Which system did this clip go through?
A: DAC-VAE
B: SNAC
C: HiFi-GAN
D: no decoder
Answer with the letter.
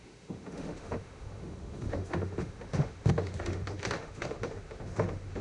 A